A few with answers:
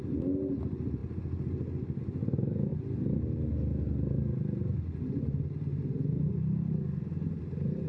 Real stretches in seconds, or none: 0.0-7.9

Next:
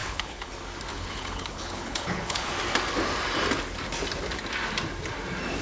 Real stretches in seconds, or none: 0.5-0.9; 2.5-5.6

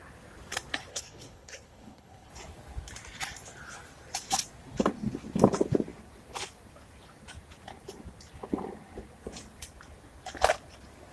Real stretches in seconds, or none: 0.0-0.9; 2.3-11.1